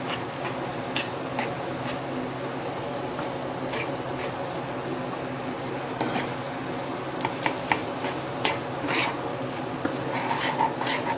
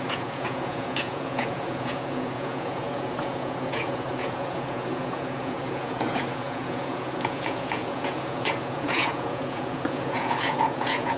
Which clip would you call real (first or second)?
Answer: first